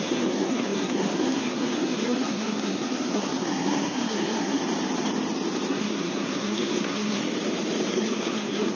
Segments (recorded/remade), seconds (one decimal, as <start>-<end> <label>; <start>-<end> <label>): 0.0-4.6 remade; 4.6-5.7 recorded; 5.7-7.2 remade; 7.2-7.9 recorded; 7.9-8.8 remade